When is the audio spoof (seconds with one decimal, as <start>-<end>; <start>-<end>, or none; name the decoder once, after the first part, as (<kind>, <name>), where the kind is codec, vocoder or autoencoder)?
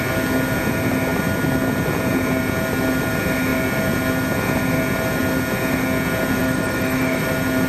6.4-7.2 (autoencoder, DAC-VAE)